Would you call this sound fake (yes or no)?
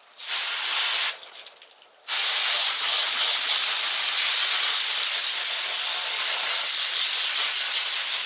no